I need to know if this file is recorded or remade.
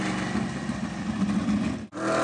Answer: recorded